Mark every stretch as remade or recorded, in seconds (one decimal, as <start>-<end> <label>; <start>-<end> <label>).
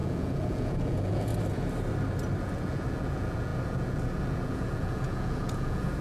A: 0.0-1.3 remade; 1.3-2.4 recorded; 2.4-6.0 remade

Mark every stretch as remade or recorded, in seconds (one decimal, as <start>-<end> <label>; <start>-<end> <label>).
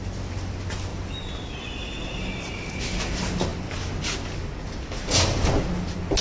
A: 0.0-6.2 recorded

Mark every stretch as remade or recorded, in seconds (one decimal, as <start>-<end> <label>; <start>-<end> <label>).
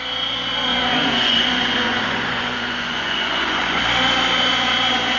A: 0.0-0.7 recorded; 0.7-3.8 remade; 3.8-5.2 recorded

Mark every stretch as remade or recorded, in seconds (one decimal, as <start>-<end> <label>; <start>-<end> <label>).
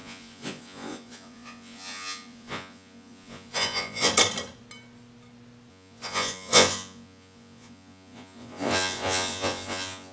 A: 0.0-4.1 remade; 4.1-5.7 recorded; 5.7-10.1 remade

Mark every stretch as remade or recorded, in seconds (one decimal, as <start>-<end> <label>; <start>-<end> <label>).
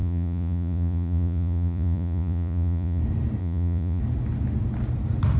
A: 0.0-3.0 remade; 3.0-3.4 recorded; 3.4-4.0 remade; 4.0-5.4 recorded